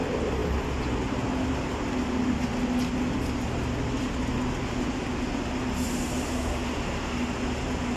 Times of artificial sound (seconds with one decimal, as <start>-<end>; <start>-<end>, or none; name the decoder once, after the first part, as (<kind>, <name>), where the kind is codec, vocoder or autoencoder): none